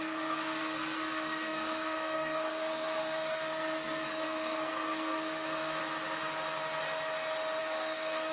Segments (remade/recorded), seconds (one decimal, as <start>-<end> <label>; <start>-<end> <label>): 0.0-5.8 remade; 5.8-7.6 recorded; 7.6-8.3 remade

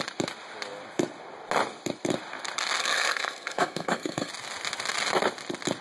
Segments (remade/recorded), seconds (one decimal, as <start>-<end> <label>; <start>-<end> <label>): 0.0-2.8 recorded; 2.8-4.3 remade; 4.3-5.8 recorded

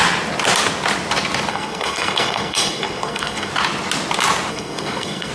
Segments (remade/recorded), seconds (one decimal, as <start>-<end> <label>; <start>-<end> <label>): 0.0-1.5 recorded; 1.5-3.5 remade; 3.5-4.5 recorded; 4.5-5.3 remade

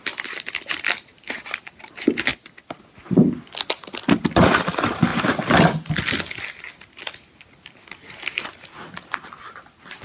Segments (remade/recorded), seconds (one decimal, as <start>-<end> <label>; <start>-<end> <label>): 0.0-10.0 recorded

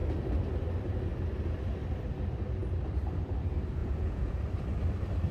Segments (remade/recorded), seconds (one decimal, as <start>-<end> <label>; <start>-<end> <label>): 0.0-3.8 recorded; 3.8-4.4 remade; 4.4-5.3 recorded

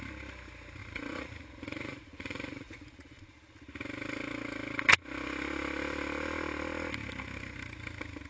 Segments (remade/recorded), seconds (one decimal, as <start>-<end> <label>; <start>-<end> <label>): 0.0-0.8 recorded; 0.8-3.2 remade; 3.2-8.3 recorded

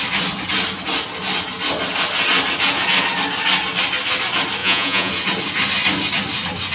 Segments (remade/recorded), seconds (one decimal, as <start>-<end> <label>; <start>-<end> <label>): 0.0-4.6 recorded; 4.6-5.1 remade; 5.1-6.7 recorded

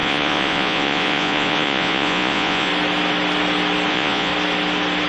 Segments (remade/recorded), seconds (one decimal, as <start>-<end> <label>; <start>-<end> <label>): 0.0-2.7 remade; 2.7-3.9 recorded; 3.9-4.3 remade; 4.3-5.1 recorded